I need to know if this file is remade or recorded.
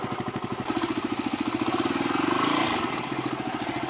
recorded